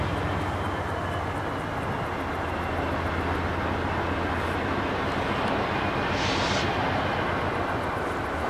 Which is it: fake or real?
real